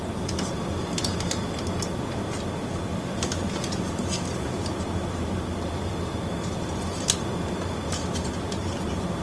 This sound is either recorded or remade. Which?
recorded